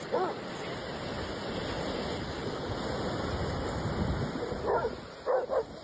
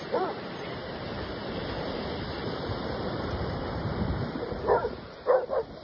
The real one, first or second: first